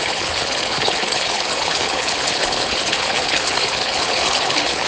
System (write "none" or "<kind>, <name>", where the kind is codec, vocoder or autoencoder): codec, HILCodec